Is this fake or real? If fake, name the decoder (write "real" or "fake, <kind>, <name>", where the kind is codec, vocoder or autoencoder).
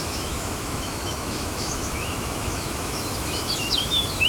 fake, autoencoder, DAC-VAE